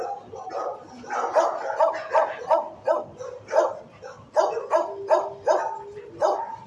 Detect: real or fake real